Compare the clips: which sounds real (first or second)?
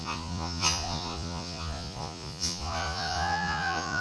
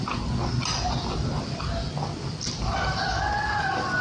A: second